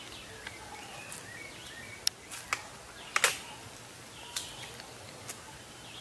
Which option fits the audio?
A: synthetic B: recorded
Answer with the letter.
B